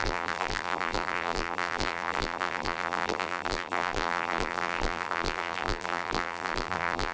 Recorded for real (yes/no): no